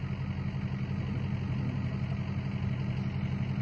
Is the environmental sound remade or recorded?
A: recorded